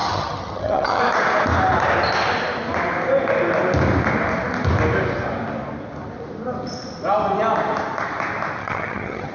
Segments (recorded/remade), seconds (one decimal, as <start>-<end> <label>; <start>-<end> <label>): 0.0-1.0 remade; 1.0-8.6 recorded; 8.6-9.3 remade